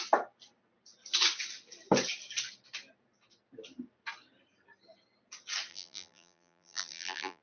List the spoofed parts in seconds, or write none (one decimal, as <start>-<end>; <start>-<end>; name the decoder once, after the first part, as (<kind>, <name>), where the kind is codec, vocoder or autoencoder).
5.7-7.4 (vocoder, BigVGAN v2)